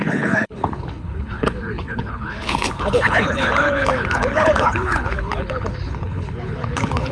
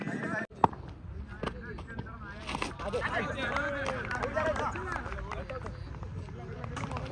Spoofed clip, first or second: first